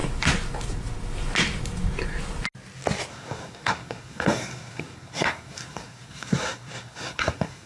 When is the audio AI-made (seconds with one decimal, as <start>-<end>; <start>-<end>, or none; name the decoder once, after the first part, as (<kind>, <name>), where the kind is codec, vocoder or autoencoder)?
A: 3.1-7.7 (codec, SNAC)

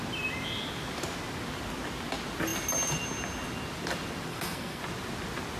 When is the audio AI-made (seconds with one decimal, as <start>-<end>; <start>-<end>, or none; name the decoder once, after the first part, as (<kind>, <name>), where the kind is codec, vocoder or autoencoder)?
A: 4.3-4.8 (codec, SNAC)

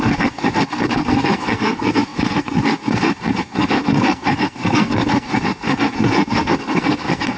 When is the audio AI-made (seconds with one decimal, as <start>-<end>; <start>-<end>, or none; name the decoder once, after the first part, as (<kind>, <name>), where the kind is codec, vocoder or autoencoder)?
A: 0.0-7.4 (codec, SNAC)

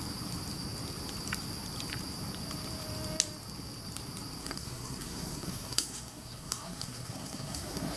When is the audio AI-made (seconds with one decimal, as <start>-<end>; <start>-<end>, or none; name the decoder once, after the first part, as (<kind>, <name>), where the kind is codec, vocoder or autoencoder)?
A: 4.4-8.0 (codec, SNAC)

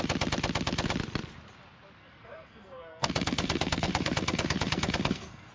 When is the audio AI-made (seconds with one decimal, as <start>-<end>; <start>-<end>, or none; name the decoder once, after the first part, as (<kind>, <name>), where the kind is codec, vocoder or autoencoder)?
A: 2.0-5.5 (codec, SNAC)